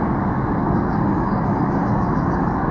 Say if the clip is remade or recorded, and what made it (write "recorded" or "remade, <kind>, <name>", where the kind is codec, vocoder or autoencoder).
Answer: remade, codec, DAC